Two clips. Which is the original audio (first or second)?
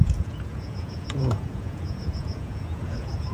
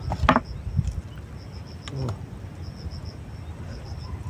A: second